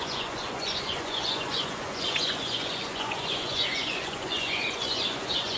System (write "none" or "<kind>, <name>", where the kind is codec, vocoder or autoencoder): vocoder, Vocos